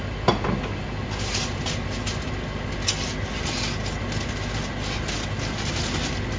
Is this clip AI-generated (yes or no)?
no